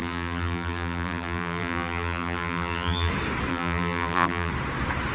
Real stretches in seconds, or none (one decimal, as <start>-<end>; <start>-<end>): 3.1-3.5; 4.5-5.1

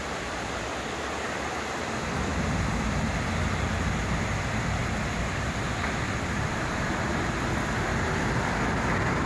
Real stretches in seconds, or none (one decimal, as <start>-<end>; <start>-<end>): 0.0-2.3; 4.2-4.8; 5.3-9.3

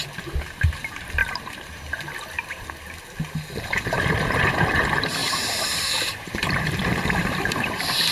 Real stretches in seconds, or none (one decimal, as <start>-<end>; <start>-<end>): 1.2-3.5